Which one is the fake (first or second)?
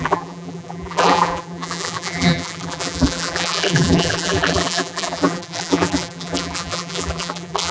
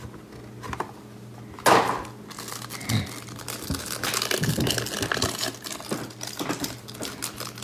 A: first